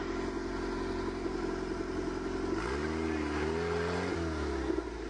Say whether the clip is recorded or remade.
recorded